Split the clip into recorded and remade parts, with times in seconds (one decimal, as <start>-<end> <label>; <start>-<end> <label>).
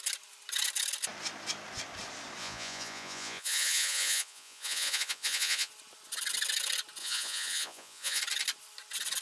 0.0-2.4 recorded; 2.4-5.7 remade; 5.7-7.0 recorded; 7.0-8.2 remade; 8.2-9.2 recorded